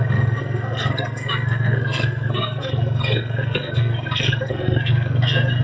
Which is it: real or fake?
fake